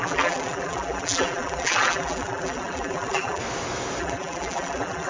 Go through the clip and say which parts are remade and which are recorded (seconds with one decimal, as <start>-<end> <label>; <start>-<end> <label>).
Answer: 0.0-3.4 remade; 3.4-4.0 recorded; 4.0-5.1 remade

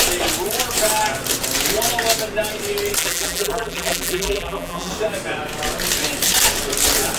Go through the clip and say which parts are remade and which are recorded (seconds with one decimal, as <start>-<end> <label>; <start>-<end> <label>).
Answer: 0.0-3.0 recorded; 3.0-4.9 remade; 4.9-7.2 recorded

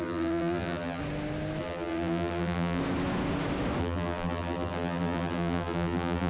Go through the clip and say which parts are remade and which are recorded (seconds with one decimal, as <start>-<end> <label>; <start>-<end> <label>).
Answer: 0.0-1.0 remade; 1.0-1.6 recorded; 1.6-2.8 remade; 2.8-3.8 recorded; 3.8-6.3 remade

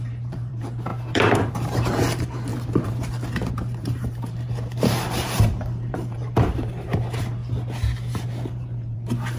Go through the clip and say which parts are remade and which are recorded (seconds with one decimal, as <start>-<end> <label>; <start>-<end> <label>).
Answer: 0.0-2.5 remade; 2.5-3.5 recorded; 3.5-7.4 remade; 7.4-8.5 recorded; 8.5-9.4 remade